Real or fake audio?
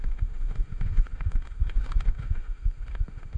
fake